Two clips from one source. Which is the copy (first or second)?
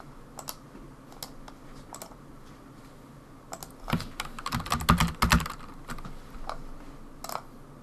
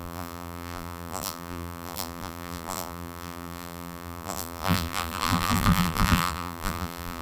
second